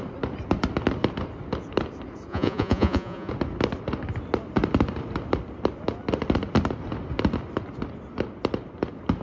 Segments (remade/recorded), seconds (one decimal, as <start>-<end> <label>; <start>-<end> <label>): 0.0-2.3 recorded; 2.3-3.3 remade; 3.3-9.2 recorded